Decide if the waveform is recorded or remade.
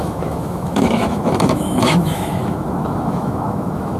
remade